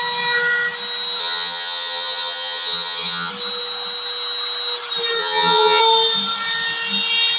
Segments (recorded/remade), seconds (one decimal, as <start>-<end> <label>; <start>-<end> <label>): 0.0-1.2 recorded; 1.2-3.3 remade; 3.3-5.2 recorded; 5.2-5.8 remade; 5.8-7.4 recorded